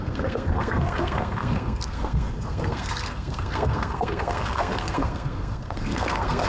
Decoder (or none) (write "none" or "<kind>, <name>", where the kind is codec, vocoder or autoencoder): codec, SNAC